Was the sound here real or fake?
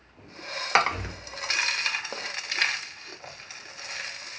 real